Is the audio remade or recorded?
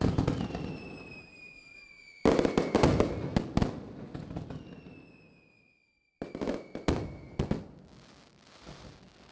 recorded